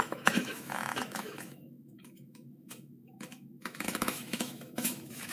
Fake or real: fake